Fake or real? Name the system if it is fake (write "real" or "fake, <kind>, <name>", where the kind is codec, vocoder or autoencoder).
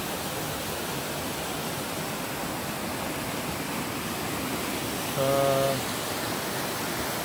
real